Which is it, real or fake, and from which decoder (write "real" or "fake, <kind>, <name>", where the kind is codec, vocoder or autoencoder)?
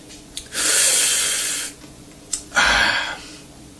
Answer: fake, vocoder, Vocos